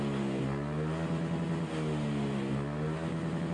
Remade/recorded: recorded